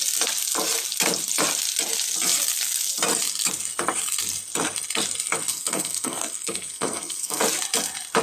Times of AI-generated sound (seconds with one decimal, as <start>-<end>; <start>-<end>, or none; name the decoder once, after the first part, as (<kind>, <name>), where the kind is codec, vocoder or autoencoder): 5.5-7.4 (codec, SNAC)